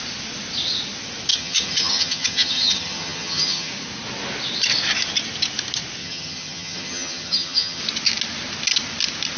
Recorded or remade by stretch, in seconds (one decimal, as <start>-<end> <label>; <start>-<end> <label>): 0.0-1.3 recorded; 1.3-3.7 remade; 3.7-6.0 recorded; 6.0-7.8 remade; 7.8-9.4 recorded